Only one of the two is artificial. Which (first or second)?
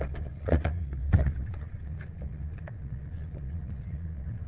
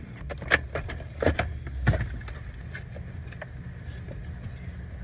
first